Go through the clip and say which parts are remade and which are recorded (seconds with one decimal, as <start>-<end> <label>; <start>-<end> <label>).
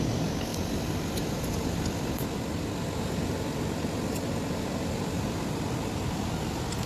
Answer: 0.0-6.9 recorded